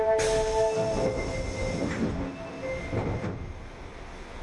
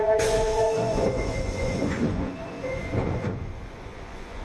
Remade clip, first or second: second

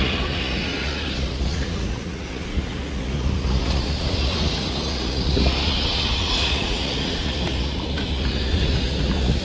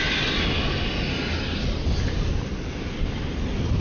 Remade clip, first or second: first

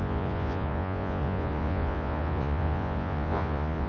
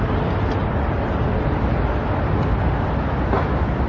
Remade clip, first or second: first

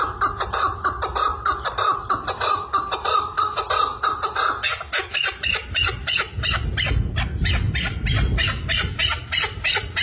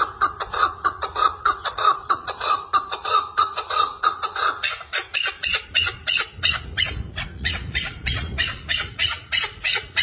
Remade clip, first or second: second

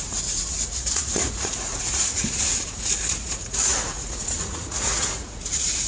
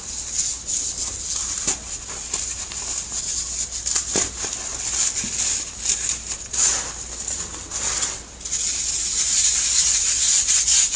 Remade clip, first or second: first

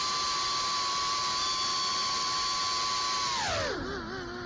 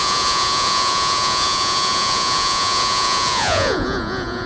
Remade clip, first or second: second